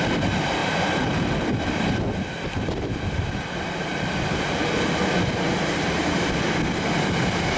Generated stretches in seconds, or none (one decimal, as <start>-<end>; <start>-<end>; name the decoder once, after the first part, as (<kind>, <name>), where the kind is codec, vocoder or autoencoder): none